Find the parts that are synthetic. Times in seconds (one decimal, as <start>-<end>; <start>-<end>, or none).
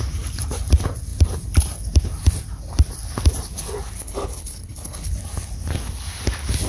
4.0-5.1